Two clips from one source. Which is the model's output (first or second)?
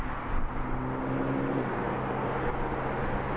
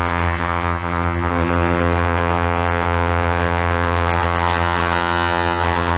second